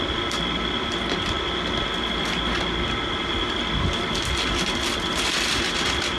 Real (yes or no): yes